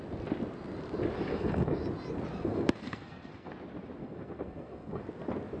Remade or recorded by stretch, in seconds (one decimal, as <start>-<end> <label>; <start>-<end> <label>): 0.0-1.3 recorded; 1.3-1.8 remade; 1.8-2.3 recorded; 2.3-3.5 remade; 3.5-4.0 recorded; 4.0-5.0 remade; 5.0-5.6 recorded